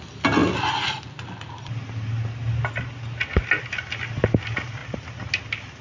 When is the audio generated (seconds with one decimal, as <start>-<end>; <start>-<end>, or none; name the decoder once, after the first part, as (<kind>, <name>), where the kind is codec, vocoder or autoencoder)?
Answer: none